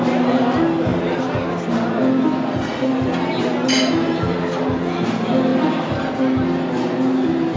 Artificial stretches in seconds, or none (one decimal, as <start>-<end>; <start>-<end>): 0.9-1.5; 2.0-2.7; 5.5-6.2